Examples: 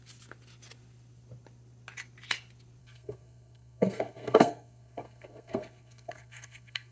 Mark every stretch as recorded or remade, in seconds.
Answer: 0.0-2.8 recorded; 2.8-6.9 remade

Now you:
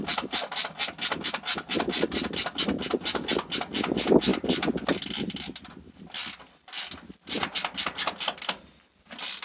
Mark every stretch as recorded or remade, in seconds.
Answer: 0.0-9.4 recorded

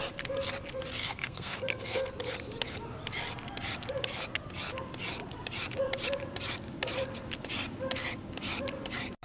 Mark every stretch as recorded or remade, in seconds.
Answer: 0.0-1.0 recorded; 1.0-2.1 remade; 2.1-9.2 recorded

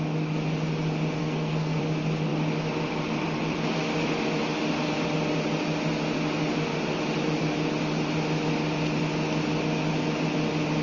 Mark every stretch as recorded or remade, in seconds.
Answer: 0.0-1.2 recorded; 1.2-1.8 remade; 1.8-10.8 recorded

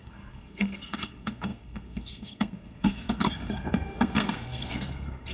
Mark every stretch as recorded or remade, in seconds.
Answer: 0.0-5.3 remade